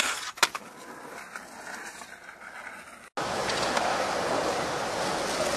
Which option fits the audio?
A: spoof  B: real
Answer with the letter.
B